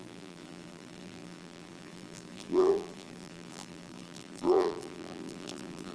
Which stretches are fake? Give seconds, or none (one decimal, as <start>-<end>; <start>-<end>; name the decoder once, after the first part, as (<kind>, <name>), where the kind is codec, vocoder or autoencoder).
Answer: 0.0-5.9 (vocoder, BigVGAN v2)